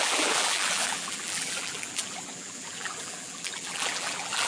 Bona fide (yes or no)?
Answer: no